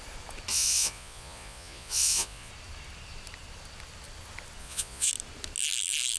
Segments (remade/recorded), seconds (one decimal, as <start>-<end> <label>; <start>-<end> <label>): 0.0-0.5 recorded; 0.5-2.5 remade; 2.5-4.6 recorded; 4.6-5.1 remade; 5.1-6.2 recorded